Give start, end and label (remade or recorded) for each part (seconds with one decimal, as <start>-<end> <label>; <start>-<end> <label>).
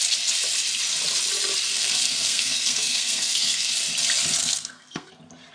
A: 0.0-1.7 recorded; 1.7-3.7 remade; 3.7-4.4 recorded; 4.4-5.1 remade; 5.1-5.5 recorded